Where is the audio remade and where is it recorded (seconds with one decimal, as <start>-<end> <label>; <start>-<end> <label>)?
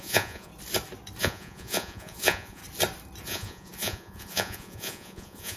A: 0.0-0.5 remade; 0.5-1.2 recorded; 1.2-2.6 remade; 2.6-3.2 recorded; 3.2-5.6 remade